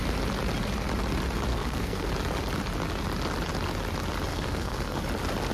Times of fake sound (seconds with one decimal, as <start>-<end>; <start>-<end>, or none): 1.5-2.1; 4.3-5.0